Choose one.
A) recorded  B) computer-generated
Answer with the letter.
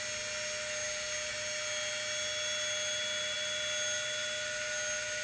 A